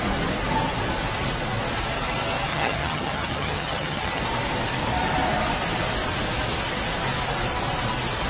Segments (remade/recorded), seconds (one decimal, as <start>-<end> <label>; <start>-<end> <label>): 0.0-2.5 recorded; 2.5-4.2 remade; 4.2-8.3 recorded